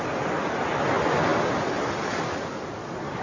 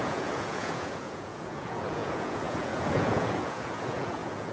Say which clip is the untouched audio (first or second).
first